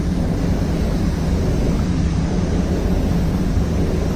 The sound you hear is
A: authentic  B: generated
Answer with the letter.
A